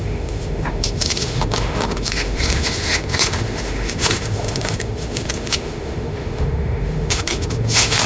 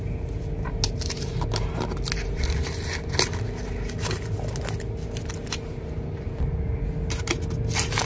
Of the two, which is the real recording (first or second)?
second